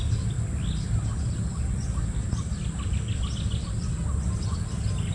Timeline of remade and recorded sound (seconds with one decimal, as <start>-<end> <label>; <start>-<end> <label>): 0.0-5.1 recorded